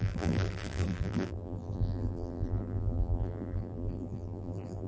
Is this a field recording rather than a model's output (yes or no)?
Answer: no